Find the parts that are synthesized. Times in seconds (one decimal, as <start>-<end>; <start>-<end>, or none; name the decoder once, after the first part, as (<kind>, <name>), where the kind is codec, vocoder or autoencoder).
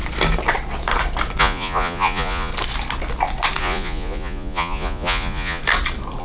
1.4-2.5 (vocoder, Vocos); 3.6-5.6